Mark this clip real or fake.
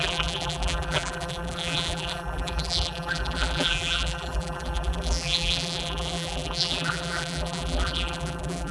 fake